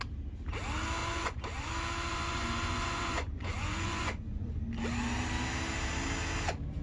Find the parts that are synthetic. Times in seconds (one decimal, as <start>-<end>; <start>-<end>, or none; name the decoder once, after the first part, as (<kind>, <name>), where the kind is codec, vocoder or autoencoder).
1.0-1.7 (vocoder, Vocos); 2.1-4.6